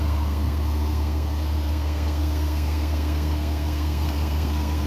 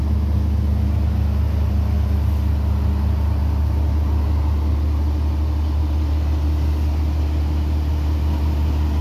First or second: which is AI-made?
first